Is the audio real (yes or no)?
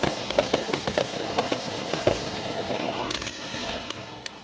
no